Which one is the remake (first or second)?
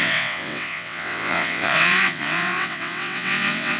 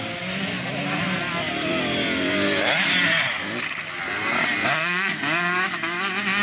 first